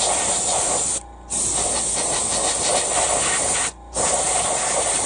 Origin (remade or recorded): recorded